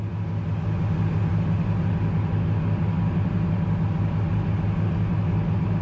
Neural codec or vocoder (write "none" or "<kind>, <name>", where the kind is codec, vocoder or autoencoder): none